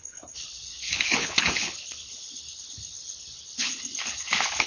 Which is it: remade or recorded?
remade